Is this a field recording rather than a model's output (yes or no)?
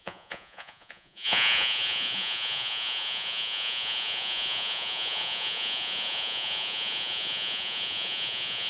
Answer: no